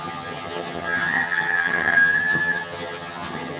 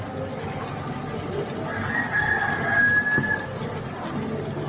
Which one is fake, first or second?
first